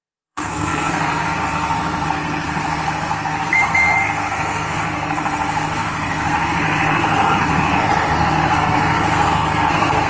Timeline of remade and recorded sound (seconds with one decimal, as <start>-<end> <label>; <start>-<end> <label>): 0.0-10.1 remade

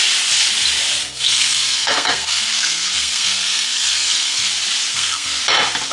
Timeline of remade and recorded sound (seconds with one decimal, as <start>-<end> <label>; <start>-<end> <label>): 0.0-1.0 recorded; 1.0-4.5 remade; 4.5-4.9 recorded; 4.9-5.4 remade; 5.4-5.9 recorded

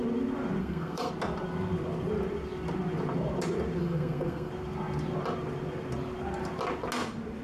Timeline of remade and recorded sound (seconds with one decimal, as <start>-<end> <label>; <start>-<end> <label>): 0.0-0.6 recorded; 0.6-1.1 remade; 1.1-3.8 recorded; 3.8-4.5 remade; 4.5-7.4 recorded